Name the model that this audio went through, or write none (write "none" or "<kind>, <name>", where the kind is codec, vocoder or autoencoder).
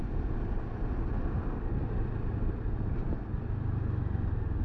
none